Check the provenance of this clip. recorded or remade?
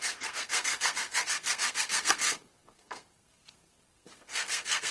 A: remade